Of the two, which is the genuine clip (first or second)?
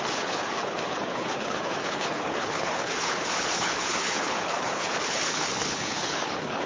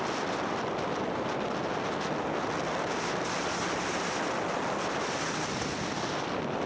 second